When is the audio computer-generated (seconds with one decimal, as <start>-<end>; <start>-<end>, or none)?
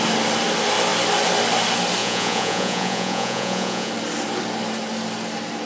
2.0-3.9